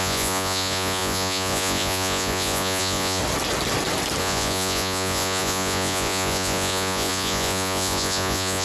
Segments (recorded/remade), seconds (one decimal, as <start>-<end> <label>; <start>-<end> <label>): 0.0-3.2 remade; 3.2-4.2 recorded; 4.2-8.6 remade